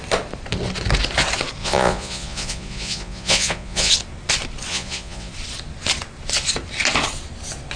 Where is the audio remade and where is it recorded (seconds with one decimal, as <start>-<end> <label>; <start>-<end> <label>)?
0.0-1.6 recorded; 1.6-3.9 remade; 3.9-4.7 recorded; 4.7-5.3 remade; 5.3-7.8 recorded